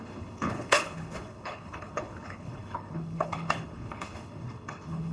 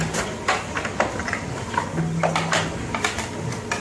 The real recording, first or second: second